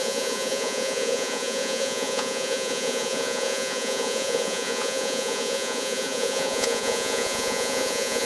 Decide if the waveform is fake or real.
fake